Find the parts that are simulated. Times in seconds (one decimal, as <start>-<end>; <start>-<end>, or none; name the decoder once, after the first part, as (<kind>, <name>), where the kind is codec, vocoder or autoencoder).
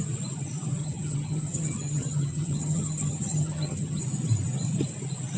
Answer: 0.8-4.0 (vocoder, HiFi-GAN)